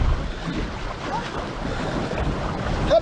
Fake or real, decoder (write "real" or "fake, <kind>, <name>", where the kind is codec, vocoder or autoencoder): real